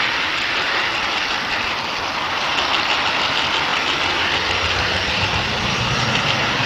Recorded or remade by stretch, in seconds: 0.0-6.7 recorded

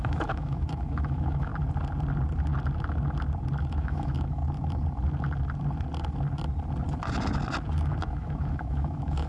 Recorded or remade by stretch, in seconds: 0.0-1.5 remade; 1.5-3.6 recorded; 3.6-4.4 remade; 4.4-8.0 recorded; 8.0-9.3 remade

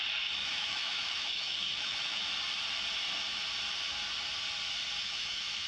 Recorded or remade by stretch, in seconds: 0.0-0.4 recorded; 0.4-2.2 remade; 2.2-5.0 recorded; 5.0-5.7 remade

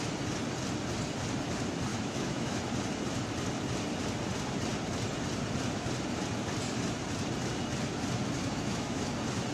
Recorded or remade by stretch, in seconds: 0.0-1.9 recorded; 1.9-2.6 remade; 2.6-8.4 recorded; 8.4-9.1 remade; 9.1-9.5 recorded

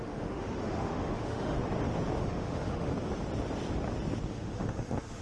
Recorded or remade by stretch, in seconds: 0.0-1.6 remade; 1.6-2.2 recorded; 2.2-2.9 remade; 2.9-4.3 recorded; 4.3-5.2 remade

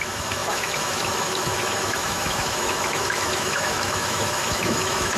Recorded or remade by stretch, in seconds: 0.0-5.2 remade

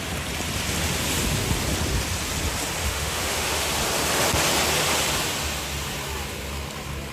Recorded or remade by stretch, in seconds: 0.0-2.8 recorded; 2.8-3.7 remade; 3.7-7.1 recorded